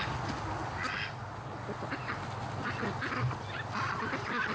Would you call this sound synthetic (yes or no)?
no